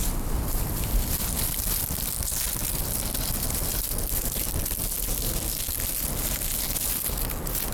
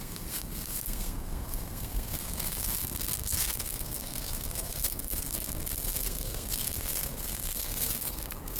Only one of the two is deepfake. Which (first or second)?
second